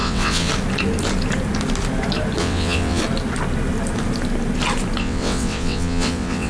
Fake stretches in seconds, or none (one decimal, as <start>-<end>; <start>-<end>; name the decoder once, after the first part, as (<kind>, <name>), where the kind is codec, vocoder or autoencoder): 0.0-0.5 (vocoder, WaveNeXt); 2.4-3.0; 5.0-6.5